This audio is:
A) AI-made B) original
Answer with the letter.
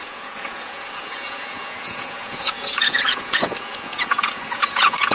A